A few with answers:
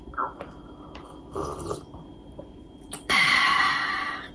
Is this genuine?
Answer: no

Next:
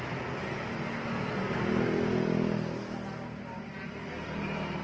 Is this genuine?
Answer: yes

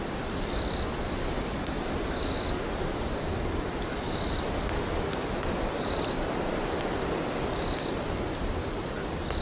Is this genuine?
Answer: yes